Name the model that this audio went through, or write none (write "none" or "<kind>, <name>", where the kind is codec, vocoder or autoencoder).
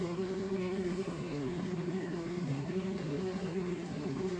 codec, SNAC